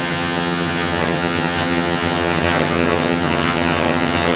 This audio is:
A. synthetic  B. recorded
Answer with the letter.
A